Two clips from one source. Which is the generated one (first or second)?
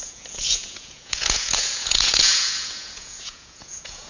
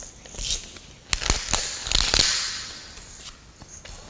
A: first